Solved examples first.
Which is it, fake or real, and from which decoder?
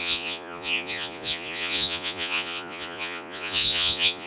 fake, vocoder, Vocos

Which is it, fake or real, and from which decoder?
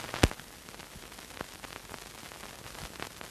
real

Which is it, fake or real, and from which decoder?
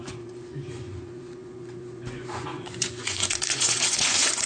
fake, vocoder, Vocos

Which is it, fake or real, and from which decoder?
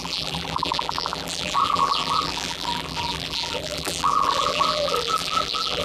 fake, vocoder, BigVGAN v2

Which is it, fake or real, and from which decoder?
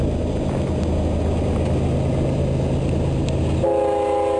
real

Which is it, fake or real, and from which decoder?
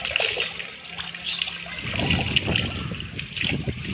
real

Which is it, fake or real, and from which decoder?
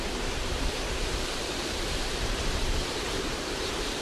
fake, vocoder, BigVGAN v2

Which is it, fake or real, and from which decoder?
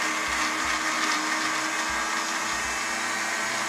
real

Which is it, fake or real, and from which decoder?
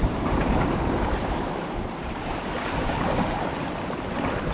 fake, vocoder, BigVGAN v2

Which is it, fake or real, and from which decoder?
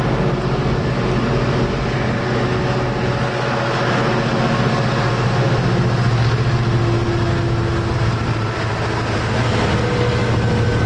real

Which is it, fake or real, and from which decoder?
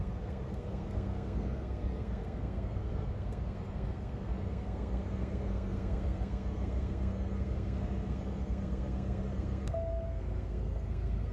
fake, codec, SNAC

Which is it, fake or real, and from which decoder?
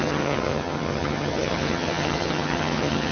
fake, vocoder, HiFi-GAN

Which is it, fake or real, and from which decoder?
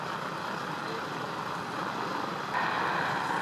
real